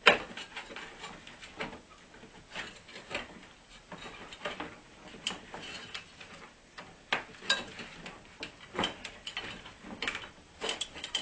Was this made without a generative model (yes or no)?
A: yes